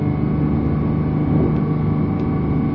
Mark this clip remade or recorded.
recorded